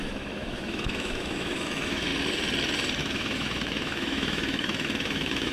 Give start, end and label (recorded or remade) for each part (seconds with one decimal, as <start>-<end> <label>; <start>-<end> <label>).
0.0-2.1 remade; 2.1-3.0 recorded; 3.0-5.5 remade